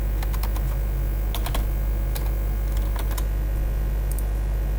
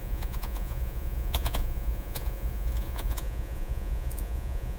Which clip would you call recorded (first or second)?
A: first